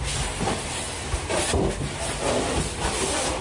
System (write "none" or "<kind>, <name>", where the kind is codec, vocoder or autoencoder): none